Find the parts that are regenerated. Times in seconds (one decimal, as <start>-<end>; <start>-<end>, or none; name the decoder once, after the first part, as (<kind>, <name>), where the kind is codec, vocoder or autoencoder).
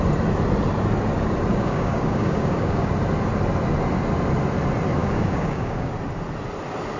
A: 1.5-2.9 (codec, DAC); 5.0-5.9